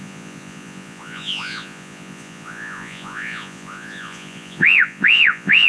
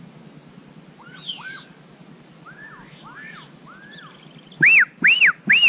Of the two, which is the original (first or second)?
second